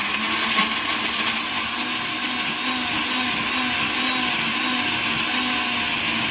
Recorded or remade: recorded